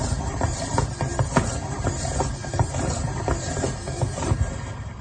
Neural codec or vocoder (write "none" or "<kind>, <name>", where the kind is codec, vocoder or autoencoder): none